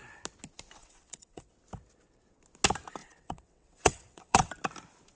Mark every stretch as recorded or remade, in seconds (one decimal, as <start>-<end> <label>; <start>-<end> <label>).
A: 0.0-0.8 recorded; 0.8-1.5 remade; 1.5-3.0 recorded; 3.0-4.5 remade; 4.5-5.2 recorded